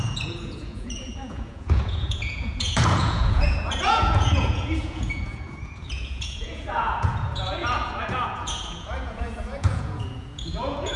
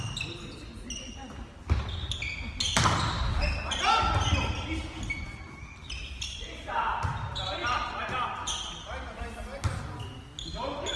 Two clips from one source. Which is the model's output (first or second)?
first